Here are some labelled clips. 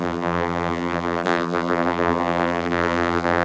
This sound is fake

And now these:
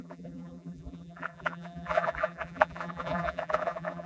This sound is fake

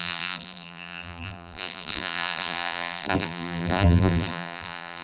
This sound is fake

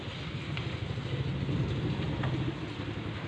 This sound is real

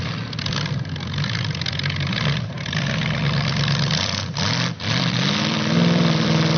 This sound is fake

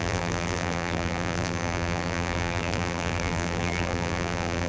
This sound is fake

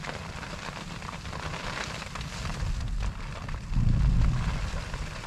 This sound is real